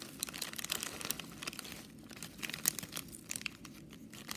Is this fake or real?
real